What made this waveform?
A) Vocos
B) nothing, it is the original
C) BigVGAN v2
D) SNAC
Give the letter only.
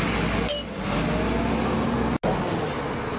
B